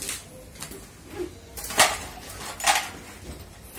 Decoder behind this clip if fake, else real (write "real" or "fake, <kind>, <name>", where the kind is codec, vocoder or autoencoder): real